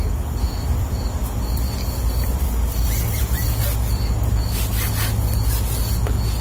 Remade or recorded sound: recorded